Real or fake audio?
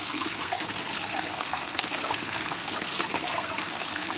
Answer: fake